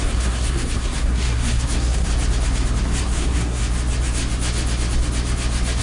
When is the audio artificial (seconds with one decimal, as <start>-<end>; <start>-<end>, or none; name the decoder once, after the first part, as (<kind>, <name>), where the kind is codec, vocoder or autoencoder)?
0.0-2.1 (codec, SNAC); 3.0-3.6